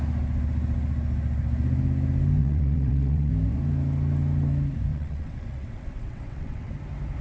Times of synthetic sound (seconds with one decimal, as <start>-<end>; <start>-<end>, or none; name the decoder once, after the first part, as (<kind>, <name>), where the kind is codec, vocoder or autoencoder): 2.4-3.3 (vocoder, WaveNeXt); 4.9-6.7